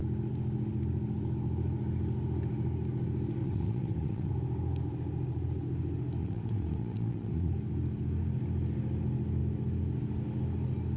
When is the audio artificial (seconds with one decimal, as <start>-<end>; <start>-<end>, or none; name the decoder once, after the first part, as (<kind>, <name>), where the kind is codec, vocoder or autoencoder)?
3.4-4.3 (vocoder, WaveNeXt); 6.2-7.5

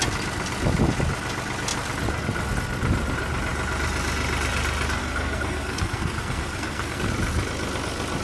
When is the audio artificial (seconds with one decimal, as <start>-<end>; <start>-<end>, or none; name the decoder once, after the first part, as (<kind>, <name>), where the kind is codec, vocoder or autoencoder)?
5.0-7.1 (codec, SNAC)

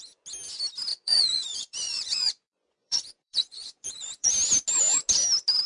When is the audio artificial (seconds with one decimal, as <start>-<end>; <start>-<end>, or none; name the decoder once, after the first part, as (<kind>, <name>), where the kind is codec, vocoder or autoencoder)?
0.9-4.3 (vocoder, Vocos)

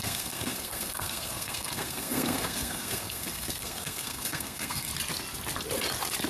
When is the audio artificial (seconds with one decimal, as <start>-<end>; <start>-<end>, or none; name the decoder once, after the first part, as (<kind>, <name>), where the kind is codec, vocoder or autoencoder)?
0.0-4.9 (codec, SNAC)

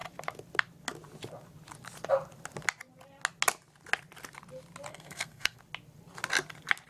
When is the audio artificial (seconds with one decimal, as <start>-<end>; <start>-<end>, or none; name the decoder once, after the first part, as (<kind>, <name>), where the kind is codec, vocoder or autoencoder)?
4.9-5.6 (codec, SNAC)

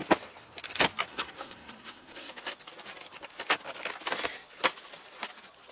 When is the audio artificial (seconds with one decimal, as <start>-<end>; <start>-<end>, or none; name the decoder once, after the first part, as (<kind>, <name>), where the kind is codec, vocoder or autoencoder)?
1.1-2.3 (codec, SNAC)

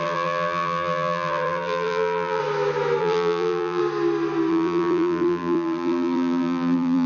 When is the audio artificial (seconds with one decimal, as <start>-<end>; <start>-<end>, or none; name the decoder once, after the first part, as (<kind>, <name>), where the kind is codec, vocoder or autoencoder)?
0.0-2.4 (vocoder, BigVGAN v2); 3.0-3.8; 4.5-7.1

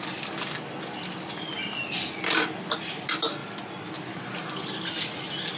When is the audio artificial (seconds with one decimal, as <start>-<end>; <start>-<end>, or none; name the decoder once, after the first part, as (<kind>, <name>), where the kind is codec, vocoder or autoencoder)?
none